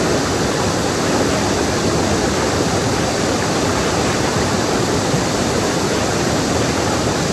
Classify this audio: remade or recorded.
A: recorded